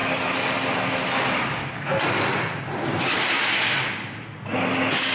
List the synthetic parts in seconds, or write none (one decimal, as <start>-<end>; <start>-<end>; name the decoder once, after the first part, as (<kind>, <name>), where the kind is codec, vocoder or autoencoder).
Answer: none